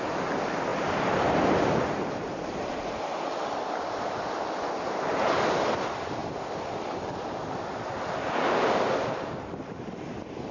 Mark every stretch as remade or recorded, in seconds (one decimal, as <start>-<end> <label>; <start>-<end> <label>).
0.0-0.7 recorded; 0.7-3.2 remade; 3.2-10.5 recorded